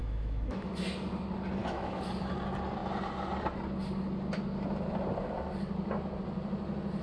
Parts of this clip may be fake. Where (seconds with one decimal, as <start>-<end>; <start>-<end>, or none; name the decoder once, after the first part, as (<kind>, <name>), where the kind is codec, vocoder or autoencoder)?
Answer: 0.0-0.7 (autoencoder, DAC-VAE); 1.6-2.1